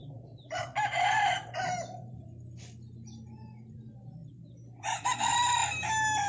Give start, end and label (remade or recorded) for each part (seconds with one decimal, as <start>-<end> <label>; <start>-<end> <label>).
0.0-0.6 recorded; 0.6-2.3 remade; 2.3-4.3 recorded; 4.3-5.3 remade; 5.3-6.3 recorded

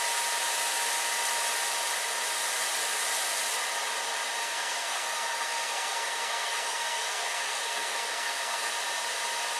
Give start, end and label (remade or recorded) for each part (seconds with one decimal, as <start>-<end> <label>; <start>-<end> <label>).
0.0-4.4 recorded; 4.4-8.7 remade; 8.7-9.6 recorded

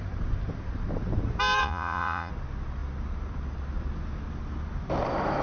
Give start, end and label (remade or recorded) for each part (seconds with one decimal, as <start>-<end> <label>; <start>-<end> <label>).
0.0-1.6 recorded; 1.6-2.3 remade; 2.3-5.4 recorded

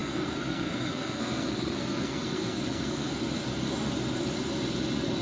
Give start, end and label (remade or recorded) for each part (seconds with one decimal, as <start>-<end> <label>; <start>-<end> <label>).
0.0-3.1 remade; 3.1-5.2 recorded

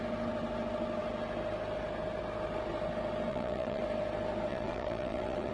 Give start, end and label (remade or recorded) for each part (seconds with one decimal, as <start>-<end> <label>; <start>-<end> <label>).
0.0-3.3 recorded; 3.3-3.8 remade; 3.8-4.5 recorded; 4.5-5.5 remade